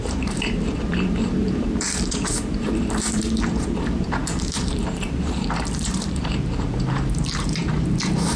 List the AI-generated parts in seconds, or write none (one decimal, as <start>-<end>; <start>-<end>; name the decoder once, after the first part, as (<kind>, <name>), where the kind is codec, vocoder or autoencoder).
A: 0.0-8.4 (vocoder, BigVGAN v2)